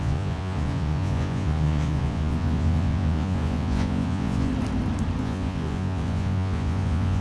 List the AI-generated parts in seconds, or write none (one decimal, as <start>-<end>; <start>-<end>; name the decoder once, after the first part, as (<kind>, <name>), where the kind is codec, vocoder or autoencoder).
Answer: 0.0-4.5 (vocoder, Vocos); 5.2-7.2